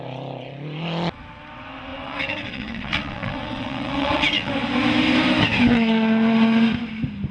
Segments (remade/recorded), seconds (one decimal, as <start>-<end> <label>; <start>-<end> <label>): 0.0-1.9 recorded; 1.9-4.5 remade; 4.5-7.3 recorded

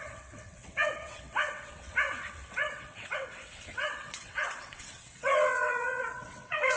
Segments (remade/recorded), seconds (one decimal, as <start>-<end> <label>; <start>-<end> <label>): 0.0-6.8 remade

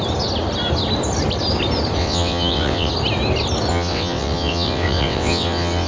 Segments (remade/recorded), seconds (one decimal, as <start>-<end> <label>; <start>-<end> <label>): 0.0-2.0 recorded; 2.0-2.9 remade; 2.9-3.7 recorded; 3.7-5.9 remade

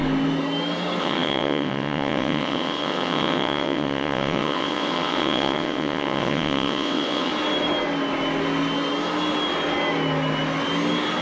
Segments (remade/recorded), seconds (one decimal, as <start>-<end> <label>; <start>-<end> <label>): 0.0-1.0 recorded; 1.0-7.3 remade; 7.3-11.2 recorded

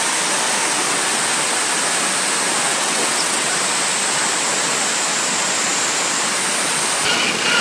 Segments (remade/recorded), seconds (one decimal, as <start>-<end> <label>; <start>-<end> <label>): 0.0-2.7 recorded; 2.7-3.5 remade; 3.5-7.6 recorded

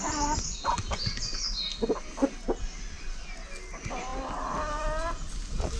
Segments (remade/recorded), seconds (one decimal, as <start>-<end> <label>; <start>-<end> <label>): 0.0-5.8 recorded